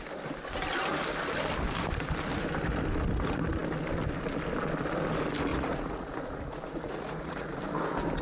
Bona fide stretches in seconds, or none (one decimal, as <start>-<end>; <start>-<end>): 0.0-5.5; 7.6-8.2